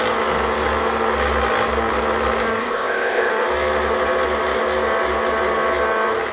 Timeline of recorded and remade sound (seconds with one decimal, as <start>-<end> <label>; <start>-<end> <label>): 0.0-2.6 recorded; 2.6-3.3 remade; 3.3-6.3 recorded